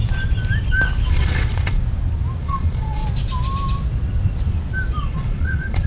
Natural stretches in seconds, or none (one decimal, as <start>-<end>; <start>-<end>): 0.0-1.1; 1.8-2.4; 3.0-4.9